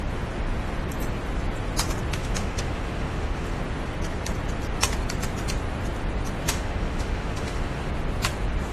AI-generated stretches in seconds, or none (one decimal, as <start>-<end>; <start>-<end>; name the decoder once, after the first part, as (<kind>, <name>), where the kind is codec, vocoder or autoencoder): 2.2-3.6 (autoencoder, DAC-VAE); 6.4-7.9